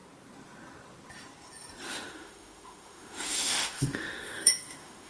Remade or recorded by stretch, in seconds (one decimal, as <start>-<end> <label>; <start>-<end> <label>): 0.0-1.9 recorded; 1.9-5.1 remade